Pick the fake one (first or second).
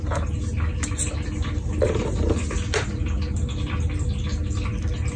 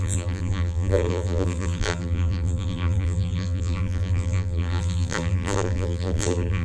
second